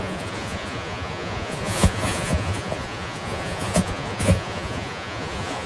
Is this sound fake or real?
fake